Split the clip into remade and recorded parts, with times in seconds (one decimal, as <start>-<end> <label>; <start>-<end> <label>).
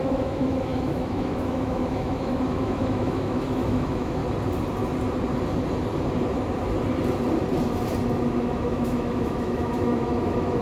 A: 0.0-4.2 remade; 4.2-8.4 recorded; 8.4-10.6 remade